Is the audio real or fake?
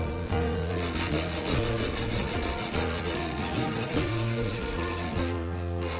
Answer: fake